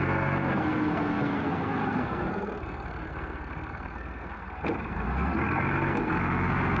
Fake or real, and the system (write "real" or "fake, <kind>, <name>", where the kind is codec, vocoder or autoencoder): fake, codec, SNAC